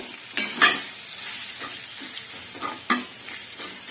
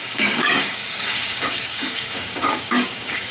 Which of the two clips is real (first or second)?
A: first